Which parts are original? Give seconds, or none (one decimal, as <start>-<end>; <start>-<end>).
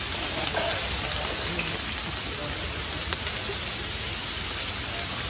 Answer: 0.0-5.3